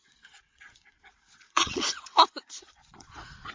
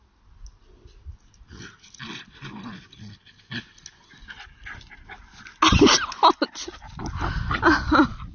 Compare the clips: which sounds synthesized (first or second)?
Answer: first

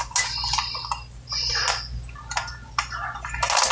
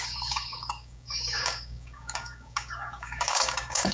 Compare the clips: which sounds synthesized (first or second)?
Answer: second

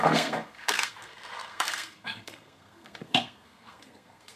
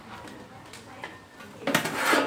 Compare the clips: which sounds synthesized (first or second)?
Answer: first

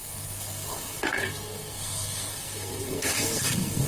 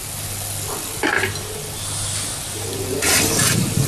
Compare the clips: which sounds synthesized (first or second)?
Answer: first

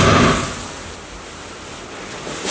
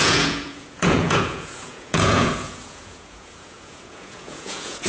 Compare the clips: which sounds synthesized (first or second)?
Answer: second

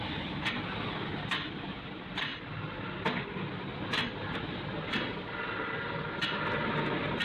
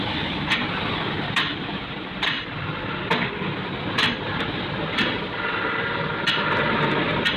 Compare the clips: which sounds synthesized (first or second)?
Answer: second